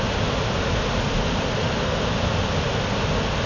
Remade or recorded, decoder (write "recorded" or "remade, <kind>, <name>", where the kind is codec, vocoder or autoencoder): recorded